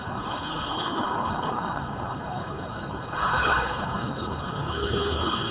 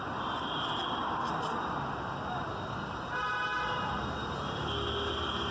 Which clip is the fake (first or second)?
first